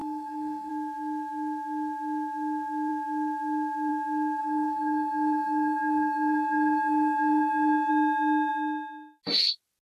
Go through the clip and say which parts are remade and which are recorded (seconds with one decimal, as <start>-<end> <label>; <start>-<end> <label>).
0.0-0.7 remade; 0.7-4.4 recorded; 4.4-7.9 remade; 7.9-9.9 recorded